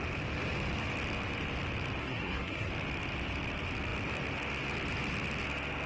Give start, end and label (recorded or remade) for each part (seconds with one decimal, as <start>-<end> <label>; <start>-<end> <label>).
0.0-2.0 recorded; 2.0-2.7 remade; 2.7-5.9 recorded